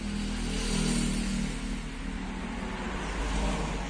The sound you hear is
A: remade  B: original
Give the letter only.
B